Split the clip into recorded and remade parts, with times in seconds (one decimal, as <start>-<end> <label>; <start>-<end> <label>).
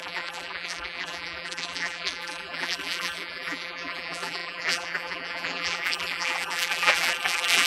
0.0-7.7 remade